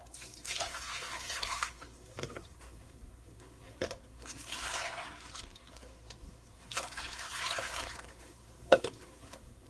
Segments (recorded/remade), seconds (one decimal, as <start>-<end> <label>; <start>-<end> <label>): 0.0-9.7 remade